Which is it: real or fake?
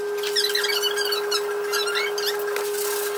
real